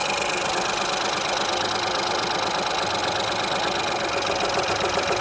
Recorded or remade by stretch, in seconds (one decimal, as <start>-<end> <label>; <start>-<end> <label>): 0.0-5.2 recorded